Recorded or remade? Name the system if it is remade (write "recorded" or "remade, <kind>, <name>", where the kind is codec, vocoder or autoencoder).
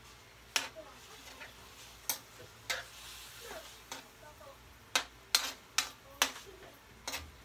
recorded